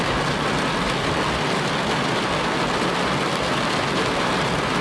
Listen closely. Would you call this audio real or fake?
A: real